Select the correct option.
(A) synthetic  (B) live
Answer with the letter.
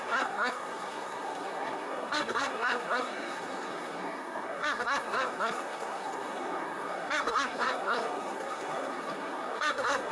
A